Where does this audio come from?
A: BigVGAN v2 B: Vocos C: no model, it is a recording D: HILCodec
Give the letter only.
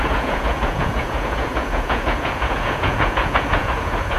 B